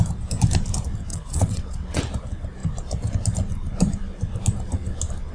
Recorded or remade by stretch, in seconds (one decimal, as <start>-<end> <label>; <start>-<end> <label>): 0.0-1.1 recorded; 1.1-2.0 remade; 2.0-5.3 recorded